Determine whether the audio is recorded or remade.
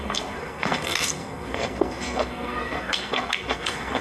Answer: remade